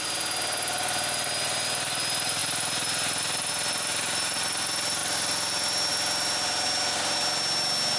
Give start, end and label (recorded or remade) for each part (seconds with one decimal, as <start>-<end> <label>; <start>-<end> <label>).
0.0-8.0 recorded